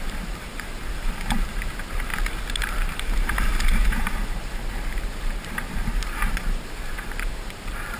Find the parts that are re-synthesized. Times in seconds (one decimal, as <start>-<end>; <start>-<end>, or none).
0.0-2.1; 2.6-8.0